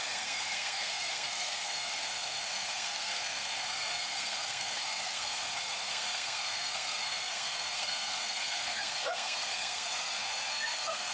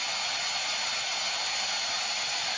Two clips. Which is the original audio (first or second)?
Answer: second